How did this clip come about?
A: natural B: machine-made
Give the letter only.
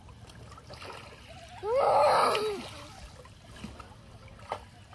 A